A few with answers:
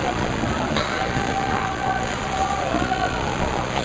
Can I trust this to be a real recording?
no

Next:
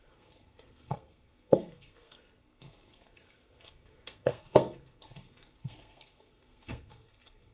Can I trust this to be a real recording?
no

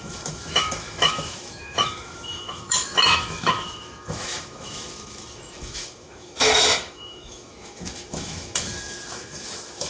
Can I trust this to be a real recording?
no